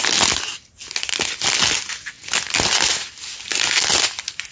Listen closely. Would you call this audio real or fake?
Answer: real